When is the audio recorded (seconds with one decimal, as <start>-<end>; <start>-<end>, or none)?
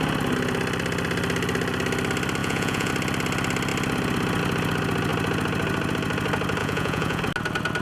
0.0-2.4; 2.9-6.6; 7.2-7.8